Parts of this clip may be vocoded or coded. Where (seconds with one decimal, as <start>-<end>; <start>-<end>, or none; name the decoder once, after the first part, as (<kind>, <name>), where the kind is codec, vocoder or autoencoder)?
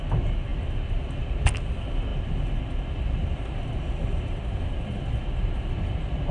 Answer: none